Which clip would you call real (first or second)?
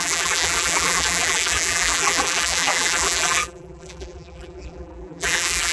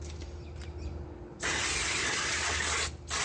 second